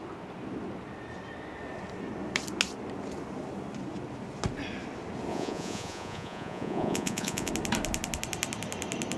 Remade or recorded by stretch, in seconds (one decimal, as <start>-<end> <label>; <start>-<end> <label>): 0.0-5.3 recorded; 5.3-7.5 remade; 7.5-9.2 recorded